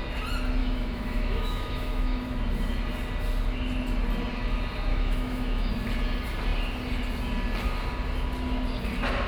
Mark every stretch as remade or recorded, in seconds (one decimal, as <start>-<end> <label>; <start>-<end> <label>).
0.0-0.6 recorded; 0.6-2.2 remade; 2.2-4.9 recorded; 4.9-5.7 remade; 5.7-9.3 recorded